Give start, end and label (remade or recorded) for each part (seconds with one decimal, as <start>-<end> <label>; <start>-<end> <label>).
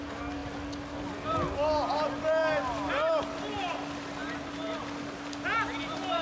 0.0-6.2 recorded